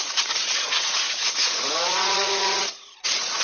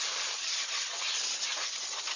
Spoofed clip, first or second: first